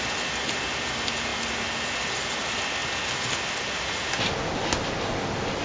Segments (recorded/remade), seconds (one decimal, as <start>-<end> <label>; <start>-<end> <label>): 0.0-5.6 recorded